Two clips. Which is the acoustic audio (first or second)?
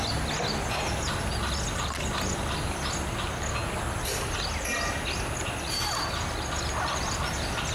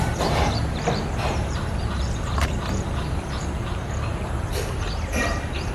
first